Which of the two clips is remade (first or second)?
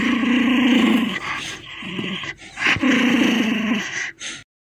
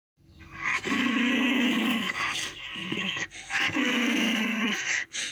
second